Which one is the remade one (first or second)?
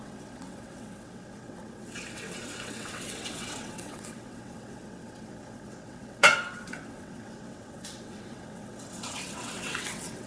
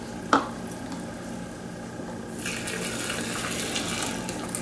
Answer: first